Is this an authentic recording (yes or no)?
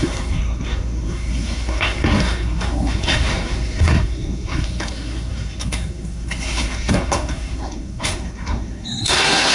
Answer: no